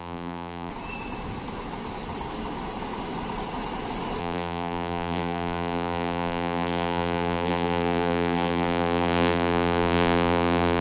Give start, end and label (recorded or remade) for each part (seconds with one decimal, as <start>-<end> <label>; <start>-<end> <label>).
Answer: 0.0-0.7 remade; 0.7-4.2 recorded; 4.2-10.8 remade

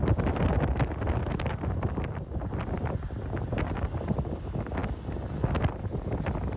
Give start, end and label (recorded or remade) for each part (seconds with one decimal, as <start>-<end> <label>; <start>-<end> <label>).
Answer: 0.0-6.6 recorded

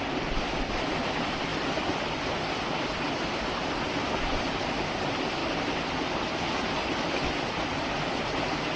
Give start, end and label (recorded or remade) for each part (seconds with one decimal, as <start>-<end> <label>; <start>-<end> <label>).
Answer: 0.0-1.5 recorded; 1.5-2.1 remade; 2.1-5.4 recorded; 5.4-7.2 remade; 7.2-8.8 recorded

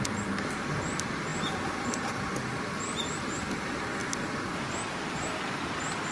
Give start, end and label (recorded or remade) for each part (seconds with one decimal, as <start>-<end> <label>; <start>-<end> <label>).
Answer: 0.0-6.1 remade

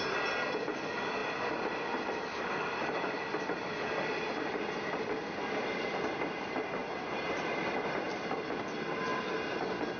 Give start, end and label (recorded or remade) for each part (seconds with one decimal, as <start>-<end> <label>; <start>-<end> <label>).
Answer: 0.0-6.8 recorded; 6.8-8.1 remade; 8.1-10.0 recorded

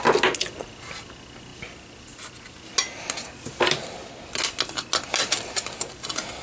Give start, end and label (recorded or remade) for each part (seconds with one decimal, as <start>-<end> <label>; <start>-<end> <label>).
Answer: 0.0-6.4 recorded